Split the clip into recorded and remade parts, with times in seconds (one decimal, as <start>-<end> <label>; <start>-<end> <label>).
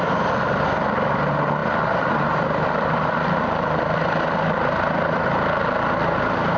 0.0-1.6 recorded; 1.6-5.6 remade; 5.6-6.6 recorded